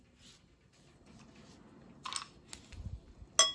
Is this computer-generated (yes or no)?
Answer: no